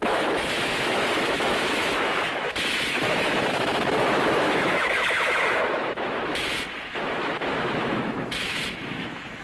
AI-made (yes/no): yes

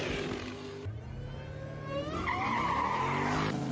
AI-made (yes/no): no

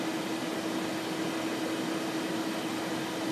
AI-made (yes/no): no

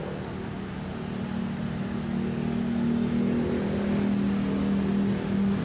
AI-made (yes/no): no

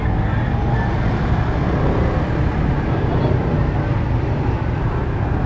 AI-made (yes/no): no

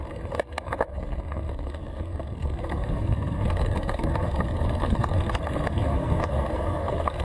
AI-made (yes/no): yes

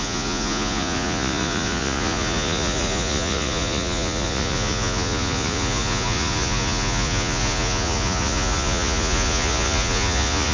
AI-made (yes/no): yes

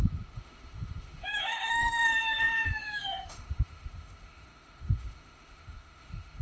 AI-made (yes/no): yes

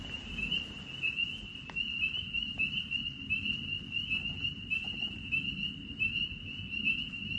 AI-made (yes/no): no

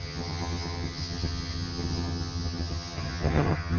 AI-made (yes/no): yes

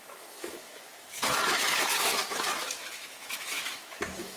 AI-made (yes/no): yes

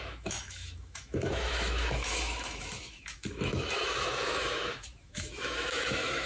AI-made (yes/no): yes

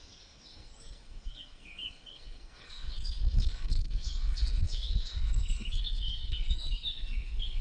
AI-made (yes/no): yes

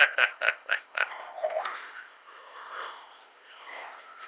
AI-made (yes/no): yes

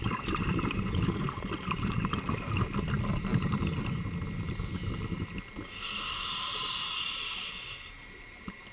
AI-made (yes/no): no